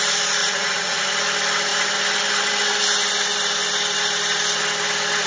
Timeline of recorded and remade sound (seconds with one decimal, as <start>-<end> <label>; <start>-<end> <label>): 0.0-0.4 recorded; 0.4-1.1 remade; 1.1-5.3 recorded